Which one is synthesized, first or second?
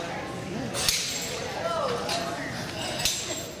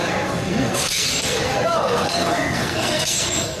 second